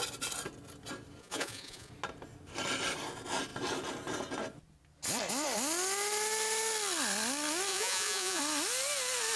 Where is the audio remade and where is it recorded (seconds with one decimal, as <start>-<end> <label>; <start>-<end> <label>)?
0.0-1.2 recorded; 1.2-1.9 remade; 1.9-7.7 recorded; 7.7-8.4 remade; 8.4-9.4 recorded